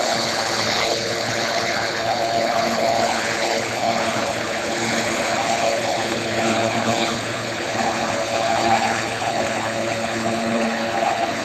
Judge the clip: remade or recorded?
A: remade